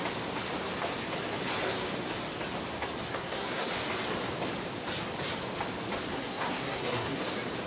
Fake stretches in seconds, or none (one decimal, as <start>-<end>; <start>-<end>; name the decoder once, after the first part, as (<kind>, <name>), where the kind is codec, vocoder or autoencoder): 3.1-3.7 (codec, SNAC); 6.1-7.2